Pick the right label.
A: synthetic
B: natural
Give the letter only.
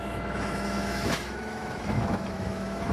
A